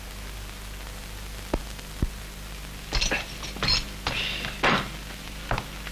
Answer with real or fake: real